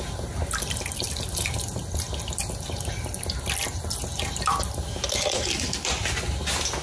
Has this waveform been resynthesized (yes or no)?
no